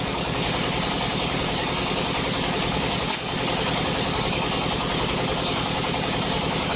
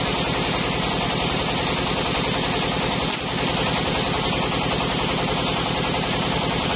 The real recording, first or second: second